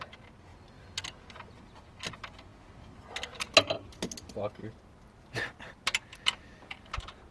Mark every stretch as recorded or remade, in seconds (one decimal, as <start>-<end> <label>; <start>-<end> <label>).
0.0-7.3 recorded